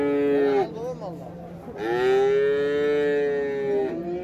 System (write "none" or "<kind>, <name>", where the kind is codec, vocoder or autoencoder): none